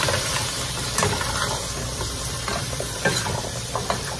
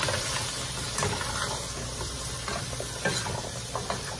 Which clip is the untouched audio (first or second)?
second